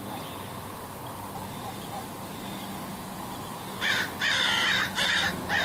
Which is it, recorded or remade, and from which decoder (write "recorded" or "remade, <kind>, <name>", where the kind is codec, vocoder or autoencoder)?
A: remade, vocoder, BigVGAN v2